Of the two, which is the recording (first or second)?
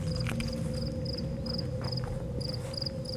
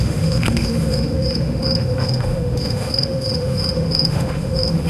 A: first